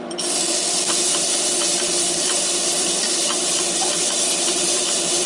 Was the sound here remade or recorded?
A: remade